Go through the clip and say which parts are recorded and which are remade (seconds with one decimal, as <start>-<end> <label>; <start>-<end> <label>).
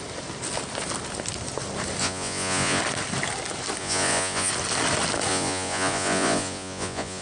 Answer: 0.0-2.0 recorded; 2.0-2.8 remade; 2.8-3.8 recorded; 3.8-4.5 remade; 4.5-5.3 recorded; 5.3-7.2 remade